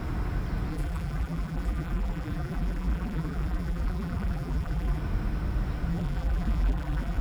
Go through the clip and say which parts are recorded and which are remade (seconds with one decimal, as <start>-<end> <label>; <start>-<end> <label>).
0.0-0.7 recorded; 0.7-5.0 remade; 5.0-5.9 recorded; 5.9-7.2 remade